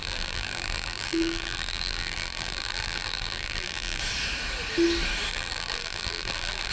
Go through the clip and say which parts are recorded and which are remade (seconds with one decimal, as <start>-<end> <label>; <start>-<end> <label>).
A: 0.0-4.0 remade; 4.0-5.3 recorded; 5.3-6.7 remade